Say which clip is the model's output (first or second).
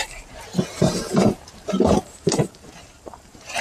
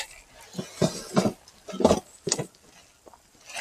first